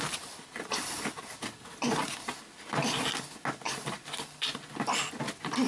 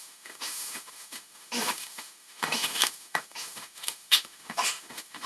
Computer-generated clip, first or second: second